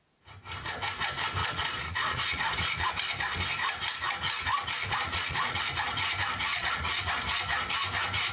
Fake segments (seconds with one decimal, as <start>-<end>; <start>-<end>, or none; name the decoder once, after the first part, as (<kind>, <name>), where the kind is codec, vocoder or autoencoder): 1.4-2.9 (vocoder, Vocos); 4.5-5.6; 6.5-7.1